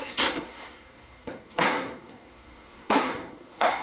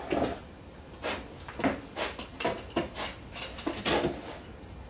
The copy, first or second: first